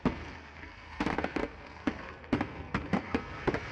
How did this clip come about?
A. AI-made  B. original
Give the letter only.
A